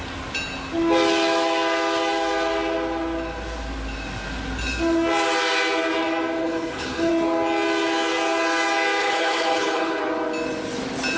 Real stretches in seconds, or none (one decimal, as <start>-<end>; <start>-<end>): 0.0-6.4; 7.1-9.0; 10.0-11.2

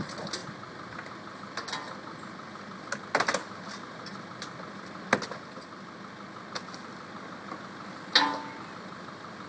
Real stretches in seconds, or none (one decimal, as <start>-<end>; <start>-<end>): 0.0-9.5

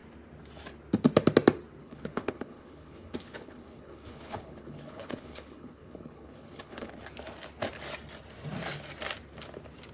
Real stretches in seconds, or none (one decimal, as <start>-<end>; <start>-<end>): 0.0-1.8; 7.0-9.9